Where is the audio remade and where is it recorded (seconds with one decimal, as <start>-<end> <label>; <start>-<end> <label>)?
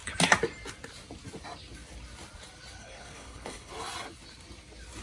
0.0-2.8 recorded; 2.8-3.7 remade; 3.7-5.0 recorded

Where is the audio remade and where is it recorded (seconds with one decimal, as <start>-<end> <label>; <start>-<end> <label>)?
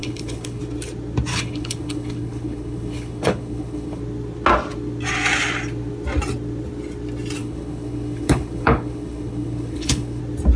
0.0-0.6 remade; 0.6-1.3 recorded; 1.3-4.0 remade; 4.0-7.4 recorded; 7.4-10.2 remade; 10.2-10.6 recorded